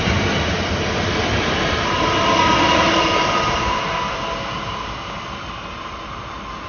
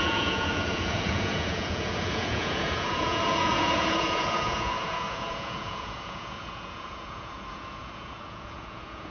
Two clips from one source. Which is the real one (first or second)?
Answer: first